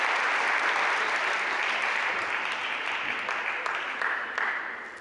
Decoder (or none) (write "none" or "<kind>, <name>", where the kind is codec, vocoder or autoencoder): none